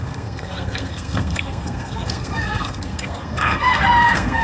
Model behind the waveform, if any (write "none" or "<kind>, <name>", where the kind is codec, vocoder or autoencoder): codec, SNAC